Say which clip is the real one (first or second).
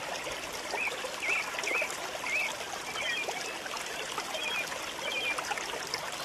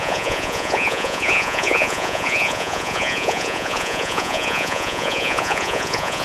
first